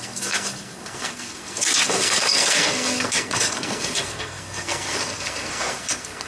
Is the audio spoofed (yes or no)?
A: yes